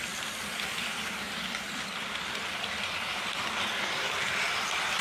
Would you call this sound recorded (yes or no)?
no